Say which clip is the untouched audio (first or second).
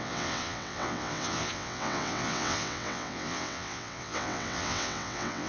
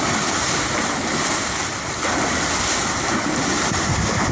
second